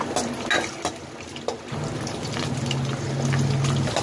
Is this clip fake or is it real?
real